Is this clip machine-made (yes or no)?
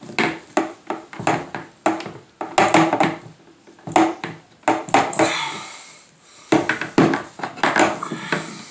no